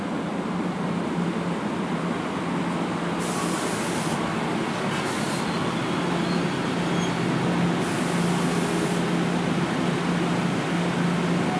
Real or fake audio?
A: real